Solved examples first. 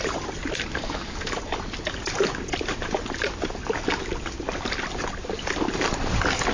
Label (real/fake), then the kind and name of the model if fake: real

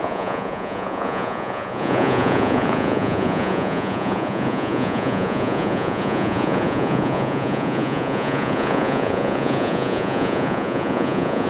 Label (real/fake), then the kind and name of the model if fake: fake, vocoder, Vocos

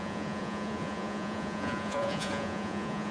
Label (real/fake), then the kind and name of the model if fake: fake, vocoder, Vocos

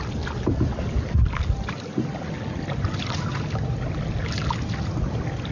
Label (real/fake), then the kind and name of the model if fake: real